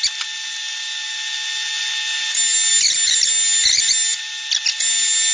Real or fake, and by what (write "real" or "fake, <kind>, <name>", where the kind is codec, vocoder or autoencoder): real